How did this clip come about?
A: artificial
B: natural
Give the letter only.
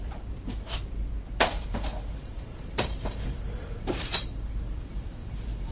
A